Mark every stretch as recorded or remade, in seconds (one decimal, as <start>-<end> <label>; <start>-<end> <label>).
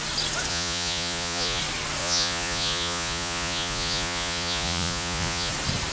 0.0-0.5 recorded; 0.5-1.6 remade; 1.6-2.0 recorded; 2.0-5.5 remade; 5.5-5.9 recorded